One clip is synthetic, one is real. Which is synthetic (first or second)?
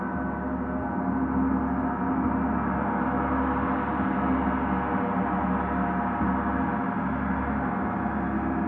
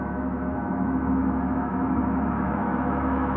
second